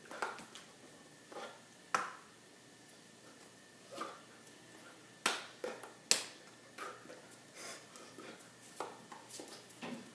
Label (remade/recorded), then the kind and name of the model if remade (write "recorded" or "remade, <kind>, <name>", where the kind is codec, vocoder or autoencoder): recorded